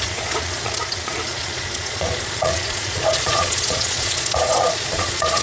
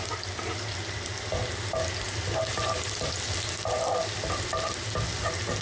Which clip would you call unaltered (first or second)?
second